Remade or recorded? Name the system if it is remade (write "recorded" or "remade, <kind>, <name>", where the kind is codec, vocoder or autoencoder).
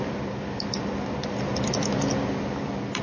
recorded